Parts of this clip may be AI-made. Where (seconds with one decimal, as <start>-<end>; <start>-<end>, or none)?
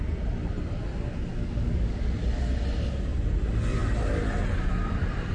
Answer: 1.3-2.0